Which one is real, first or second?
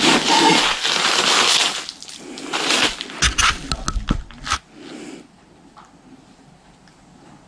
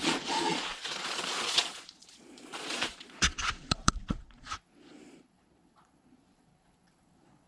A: first